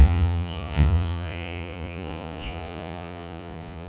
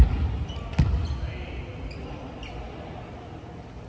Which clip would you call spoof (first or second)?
first